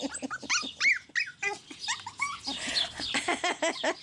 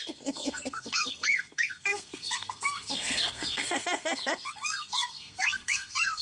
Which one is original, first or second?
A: first